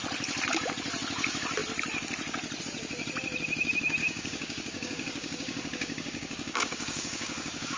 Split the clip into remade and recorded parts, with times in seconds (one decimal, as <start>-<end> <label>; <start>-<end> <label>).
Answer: 0.0-4.0 recorded; 4.0-7.8 remade